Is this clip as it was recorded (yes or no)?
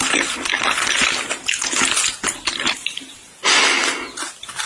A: yes